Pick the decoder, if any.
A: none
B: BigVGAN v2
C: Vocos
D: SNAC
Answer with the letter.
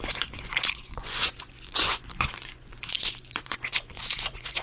C